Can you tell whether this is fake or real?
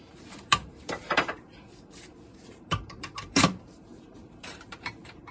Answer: fake